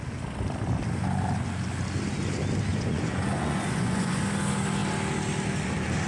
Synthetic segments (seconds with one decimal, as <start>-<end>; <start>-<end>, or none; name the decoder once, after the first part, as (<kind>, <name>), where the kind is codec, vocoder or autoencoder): 2.7-4.2 (vocoder, Vocos)